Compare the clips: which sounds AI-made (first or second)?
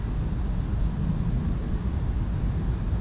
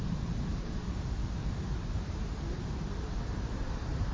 second